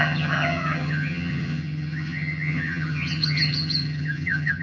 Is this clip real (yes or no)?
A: no